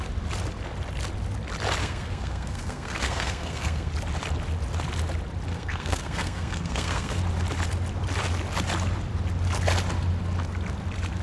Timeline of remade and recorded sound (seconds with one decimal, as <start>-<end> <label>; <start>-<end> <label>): 0.0-1.8 recorded; 1.8-3.9 remade; 3.9-5.5 recorded; 5.5-7.2 remade; 7.2-11.2 recorded